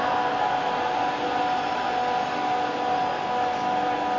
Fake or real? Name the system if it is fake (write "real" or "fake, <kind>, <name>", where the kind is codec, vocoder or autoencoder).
real